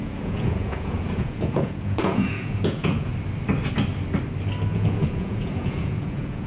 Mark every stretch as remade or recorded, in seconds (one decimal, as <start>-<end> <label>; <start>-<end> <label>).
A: 0.0-3.1 remade; 3.1-4.7 recorded; 4.7-6.5 remade